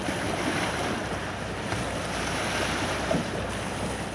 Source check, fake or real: real